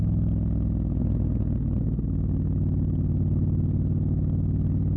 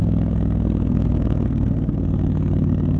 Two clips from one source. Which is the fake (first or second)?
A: second